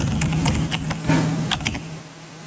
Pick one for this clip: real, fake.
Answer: real